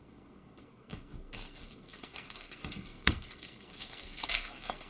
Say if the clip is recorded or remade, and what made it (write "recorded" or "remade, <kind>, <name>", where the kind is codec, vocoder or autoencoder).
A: remade, codec, SNAC